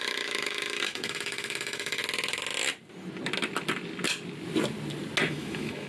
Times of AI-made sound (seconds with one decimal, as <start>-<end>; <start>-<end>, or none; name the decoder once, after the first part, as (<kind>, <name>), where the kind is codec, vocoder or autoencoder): 0.0-2.0 (autoencoder, DAC-VAE); 5.3-5.9